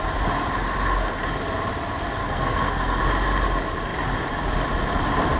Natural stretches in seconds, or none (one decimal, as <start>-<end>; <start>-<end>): 0.0-2.2; 3.0-5.4